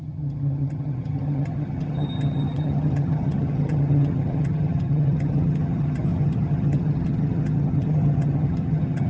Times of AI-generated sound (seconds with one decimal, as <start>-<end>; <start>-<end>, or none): 0.0-9.1